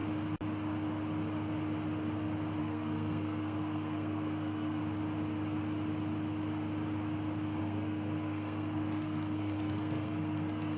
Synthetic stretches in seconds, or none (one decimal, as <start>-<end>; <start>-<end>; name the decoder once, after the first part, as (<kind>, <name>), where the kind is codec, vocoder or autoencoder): 2.6-4.8 (codec, SNAC); 7.6-10.8